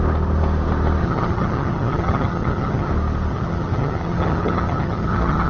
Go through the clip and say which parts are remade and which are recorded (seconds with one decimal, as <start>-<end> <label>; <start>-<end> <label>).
0.0-1.0 recorded; 1.0-2.9 remade; 2.9-3.3 recorded; 3.3-5.5 remade